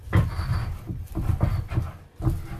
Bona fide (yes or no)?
yes